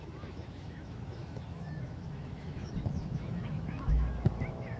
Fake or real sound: fake